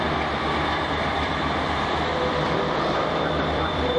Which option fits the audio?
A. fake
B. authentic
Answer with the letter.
A